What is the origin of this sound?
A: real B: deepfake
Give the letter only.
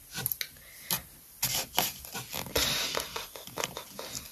A